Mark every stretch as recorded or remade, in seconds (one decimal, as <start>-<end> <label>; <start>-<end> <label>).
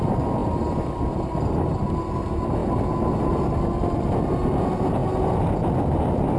0.0-6.4 recorded